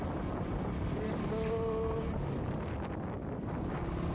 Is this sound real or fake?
real